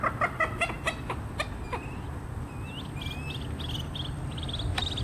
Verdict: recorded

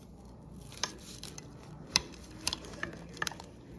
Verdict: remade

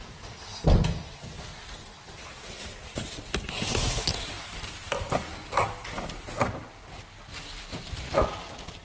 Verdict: recorded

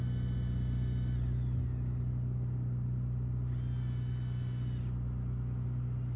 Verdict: recorded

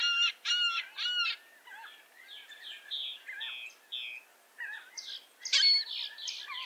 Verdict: recorded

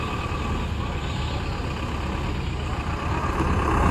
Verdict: recorded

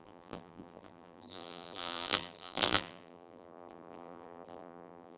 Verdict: remade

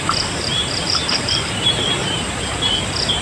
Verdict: remade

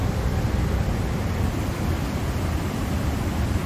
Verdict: recorded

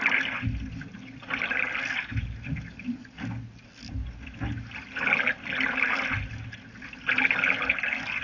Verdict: recorded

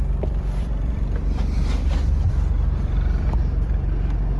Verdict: remade